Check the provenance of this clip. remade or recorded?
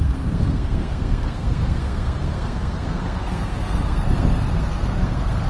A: remade